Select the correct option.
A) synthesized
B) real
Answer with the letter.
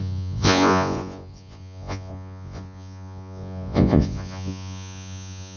A